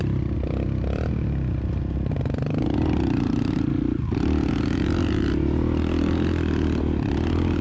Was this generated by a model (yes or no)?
no